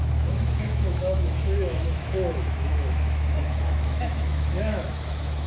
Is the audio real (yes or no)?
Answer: no